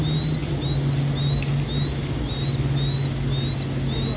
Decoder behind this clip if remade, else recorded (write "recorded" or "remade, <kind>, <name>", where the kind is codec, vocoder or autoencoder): recorded